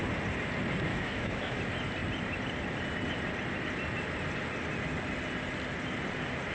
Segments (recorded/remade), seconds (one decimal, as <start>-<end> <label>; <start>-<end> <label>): 0.0-0.9 recorded; 0.9-1.6 remade; 1.6-6.5 recorded